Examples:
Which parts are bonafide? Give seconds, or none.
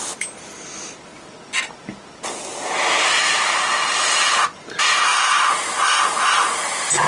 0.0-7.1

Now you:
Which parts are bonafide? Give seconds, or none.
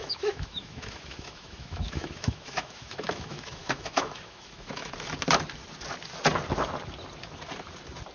4.9-8.1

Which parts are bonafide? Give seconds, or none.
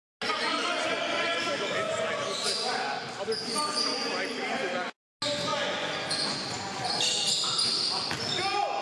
0.0-5.5; 6.9-8.8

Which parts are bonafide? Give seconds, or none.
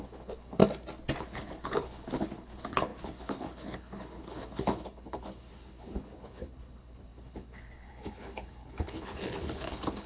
0.6-1.2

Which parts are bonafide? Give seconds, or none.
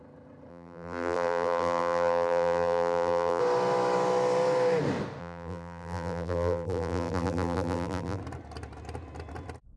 0.0-0.5; 3.4-5.2; 8.2-9.8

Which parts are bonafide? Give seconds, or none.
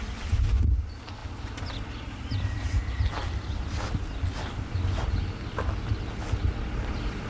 0.0-7.3